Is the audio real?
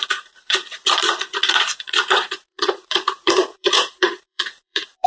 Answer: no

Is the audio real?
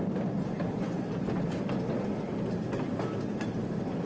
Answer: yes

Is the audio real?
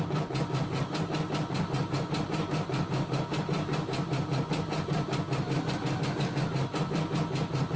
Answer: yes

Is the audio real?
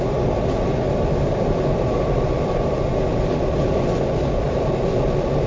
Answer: yes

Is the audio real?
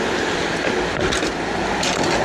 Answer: yes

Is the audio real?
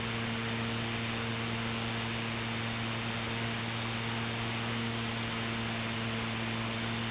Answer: yes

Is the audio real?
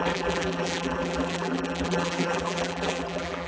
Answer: no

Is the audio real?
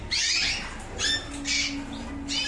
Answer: yes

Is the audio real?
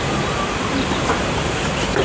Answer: yes